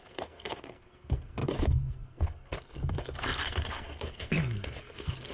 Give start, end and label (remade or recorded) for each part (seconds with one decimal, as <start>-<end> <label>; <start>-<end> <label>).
0.0-5.3 remade